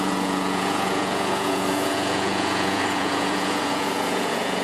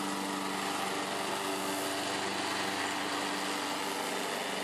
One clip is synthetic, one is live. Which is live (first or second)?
second